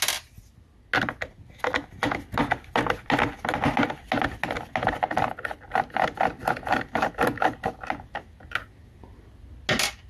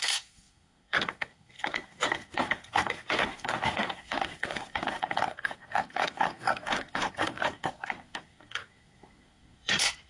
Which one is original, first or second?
first